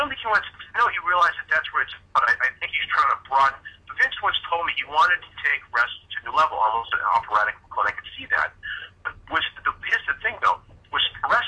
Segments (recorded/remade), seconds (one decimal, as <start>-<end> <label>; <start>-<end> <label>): 0.0-11.5 recorded